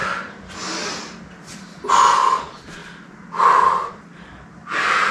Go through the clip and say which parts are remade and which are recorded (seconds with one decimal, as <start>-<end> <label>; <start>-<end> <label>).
0.0-5.1 recorded